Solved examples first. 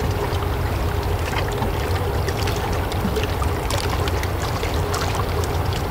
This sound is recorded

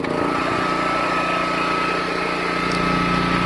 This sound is recorded